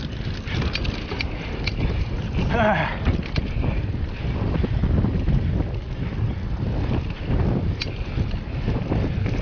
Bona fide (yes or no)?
yes